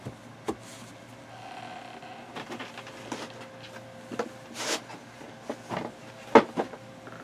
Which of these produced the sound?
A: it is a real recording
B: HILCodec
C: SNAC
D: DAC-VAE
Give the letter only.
A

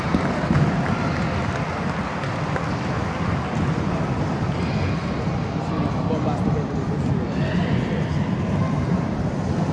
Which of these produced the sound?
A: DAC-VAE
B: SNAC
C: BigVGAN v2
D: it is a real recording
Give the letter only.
D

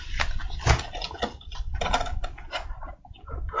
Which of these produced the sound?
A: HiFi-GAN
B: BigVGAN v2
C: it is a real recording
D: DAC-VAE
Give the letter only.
C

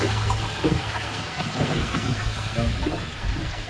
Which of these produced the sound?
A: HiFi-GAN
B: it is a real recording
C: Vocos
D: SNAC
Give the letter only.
D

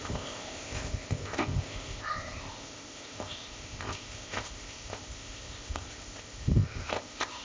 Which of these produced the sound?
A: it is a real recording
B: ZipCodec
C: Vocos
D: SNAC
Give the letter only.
B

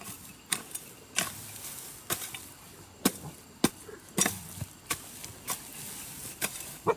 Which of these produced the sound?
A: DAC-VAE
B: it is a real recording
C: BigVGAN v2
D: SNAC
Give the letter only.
B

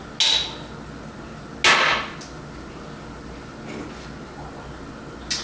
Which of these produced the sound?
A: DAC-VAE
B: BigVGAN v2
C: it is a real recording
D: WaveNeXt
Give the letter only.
C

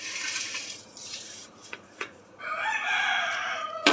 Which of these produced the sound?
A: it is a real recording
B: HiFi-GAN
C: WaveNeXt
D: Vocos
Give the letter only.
D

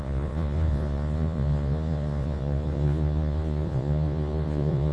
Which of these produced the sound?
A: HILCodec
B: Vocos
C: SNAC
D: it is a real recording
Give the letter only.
B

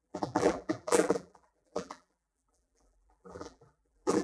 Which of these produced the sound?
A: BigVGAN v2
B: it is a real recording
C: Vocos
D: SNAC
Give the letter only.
A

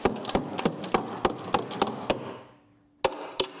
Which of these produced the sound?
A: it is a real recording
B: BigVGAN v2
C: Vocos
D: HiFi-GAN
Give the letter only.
A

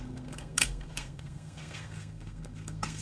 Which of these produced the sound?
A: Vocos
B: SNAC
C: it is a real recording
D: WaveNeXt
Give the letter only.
B